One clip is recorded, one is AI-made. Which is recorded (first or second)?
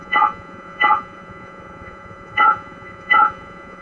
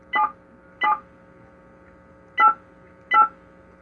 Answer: second